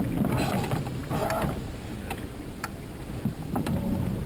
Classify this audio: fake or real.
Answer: real